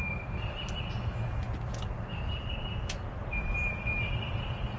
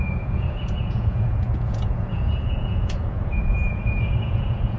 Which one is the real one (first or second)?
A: first